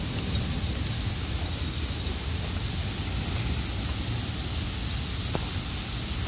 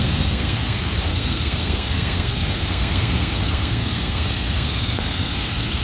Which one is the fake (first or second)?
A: second